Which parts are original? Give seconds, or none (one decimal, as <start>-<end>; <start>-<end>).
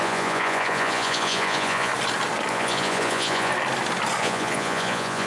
1.9-2.5; 3.5-4.2